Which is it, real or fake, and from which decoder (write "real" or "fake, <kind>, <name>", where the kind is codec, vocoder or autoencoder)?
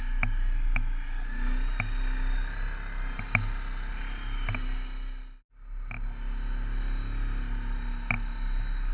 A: real